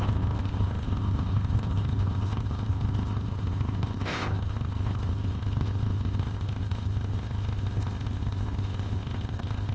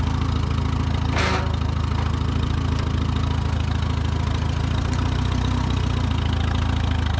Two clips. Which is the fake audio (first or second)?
first